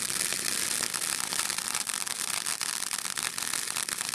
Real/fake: real